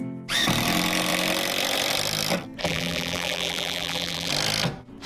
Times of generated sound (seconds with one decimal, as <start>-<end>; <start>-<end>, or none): 2.6-4.3